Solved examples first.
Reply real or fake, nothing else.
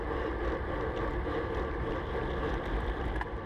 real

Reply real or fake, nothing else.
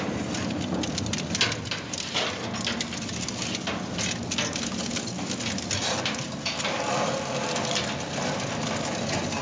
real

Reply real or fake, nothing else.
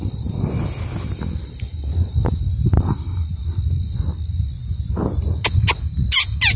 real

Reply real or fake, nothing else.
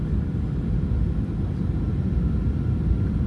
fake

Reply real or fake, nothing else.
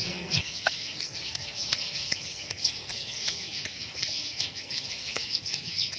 fake